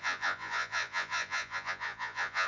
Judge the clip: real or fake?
fake